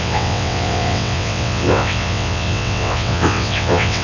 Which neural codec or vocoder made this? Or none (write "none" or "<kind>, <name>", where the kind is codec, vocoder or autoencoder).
vocoder, WaveNeXt